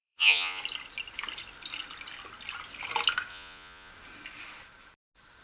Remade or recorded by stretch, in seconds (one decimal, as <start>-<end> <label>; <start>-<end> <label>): 0.0-0.6 remade; 0.6-3.3 recorded; 3.3-3.9 remade; 3.9-5.4 recorded